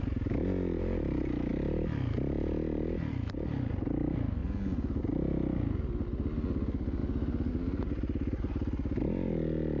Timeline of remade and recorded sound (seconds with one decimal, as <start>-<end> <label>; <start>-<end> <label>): 0.0-9.8 recorded